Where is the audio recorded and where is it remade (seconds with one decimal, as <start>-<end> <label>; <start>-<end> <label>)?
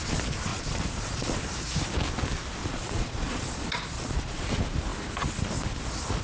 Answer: 0.0-0.5 recorded; 0.5-1.4 remade; 1.4-2.6 recorded; 2.6-4.5 remade; 4.5-6.2 recorded